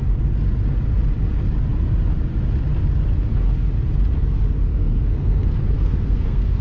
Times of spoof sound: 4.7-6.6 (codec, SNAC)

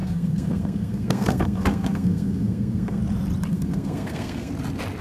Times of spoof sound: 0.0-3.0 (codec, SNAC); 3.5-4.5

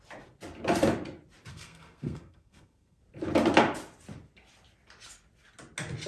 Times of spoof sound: 1.5-3.0 (codec, SNAC)

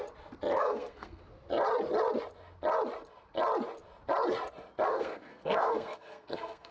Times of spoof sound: 0.5-1.2 (codec, SNAC); 4.9-6.7